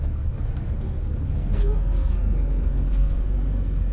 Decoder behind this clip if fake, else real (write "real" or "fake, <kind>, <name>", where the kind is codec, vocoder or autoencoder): fake, codec, SNAC